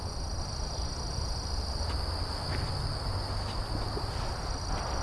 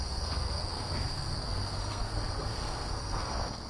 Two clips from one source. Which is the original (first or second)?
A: first